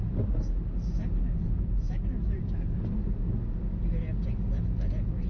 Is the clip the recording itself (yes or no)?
yes